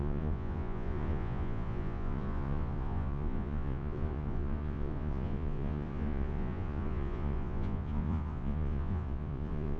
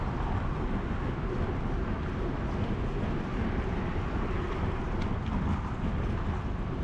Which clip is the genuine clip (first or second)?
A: second